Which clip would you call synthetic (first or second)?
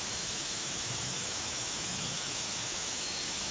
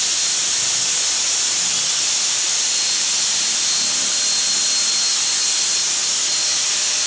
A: first